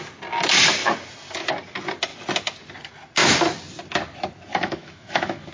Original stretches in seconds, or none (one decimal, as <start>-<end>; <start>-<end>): 0.0-4.5